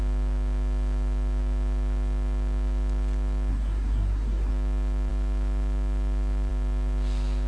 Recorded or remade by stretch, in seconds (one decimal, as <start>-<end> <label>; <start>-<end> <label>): 0.0-3.5 recorded; 3.5-4.5 remade; 4.5-7.5 recorded